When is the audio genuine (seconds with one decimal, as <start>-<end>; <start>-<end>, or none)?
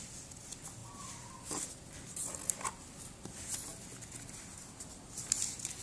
0.0-5.8